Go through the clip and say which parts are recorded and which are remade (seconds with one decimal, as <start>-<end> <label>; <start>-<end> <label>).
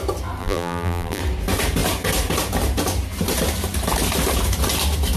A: 0.0-0.4 recorded; 0.4-1.2 remade; 1.2-5.2 recorded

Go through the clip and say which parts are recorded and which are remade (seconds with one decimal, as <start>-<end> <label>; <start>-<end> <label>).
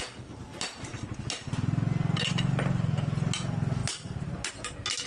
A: 0.0-5.1 recorded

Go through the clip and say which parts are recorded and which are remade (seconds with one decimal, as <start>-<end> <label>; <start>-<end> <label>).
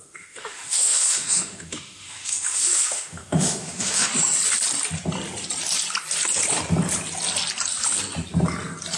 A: 0.0-4.1 remade; 4.1-9.0 recorded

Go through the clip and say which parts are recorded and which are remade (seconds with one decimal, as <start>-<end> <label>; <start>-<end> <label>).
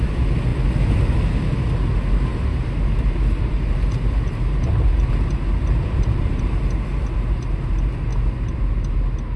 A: 0.0-2.3 recorded; 2.3-5.1 remade; 5.1-5.6 recorded; 5.6-6.6 remade; 6.6-9.4 recorded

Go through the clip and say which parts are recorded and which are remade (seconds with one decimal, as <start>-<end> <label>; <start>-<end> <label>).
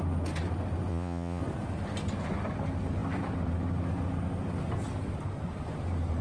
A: 0.0-0.9 recorded; 0.9-1.4 remade; 1.4-6.2 recorded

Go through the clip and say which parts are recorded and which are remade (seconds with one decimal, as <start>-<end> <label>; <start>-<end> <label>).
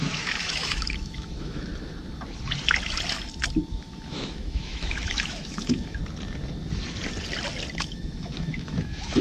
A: 0.0-1.7 remade; 1.7-3.7 recorded; 3.7-6.0 remade; 6.0-7.8 recorded; 7.8-9.2 remade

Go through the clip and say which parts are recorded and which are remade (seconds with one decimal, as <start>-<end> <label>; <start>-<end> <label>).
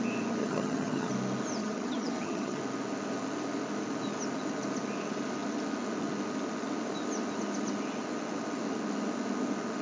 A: 0.0-0.4 recorded; 0.4-1.1 remade; 1.1-1.6 recorded; 1.6-2.6 remade; 2.6-9.8 recorded